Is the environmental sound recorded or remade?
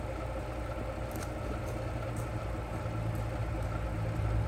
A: recorded